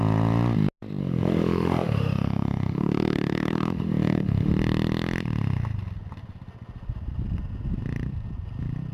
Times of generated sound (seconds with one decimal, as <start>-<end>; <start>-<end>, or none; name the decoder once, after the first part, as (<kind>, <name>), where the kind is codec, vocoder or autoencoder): 1.0-4.5 (autoencoder, DAC-VAE)